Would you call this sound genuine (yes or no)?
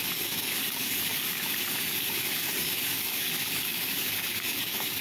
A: no